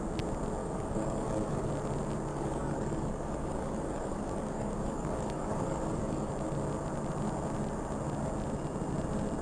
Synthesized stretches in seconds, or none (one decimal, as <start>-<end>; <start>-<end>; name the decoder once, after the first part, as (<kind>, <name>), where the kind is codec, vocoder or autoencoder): 0.6-1.7 (codec, DAC); 2.3-6.3